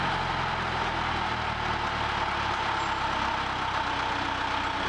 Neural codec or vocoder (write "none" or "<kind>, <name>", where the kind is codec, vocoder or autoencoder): none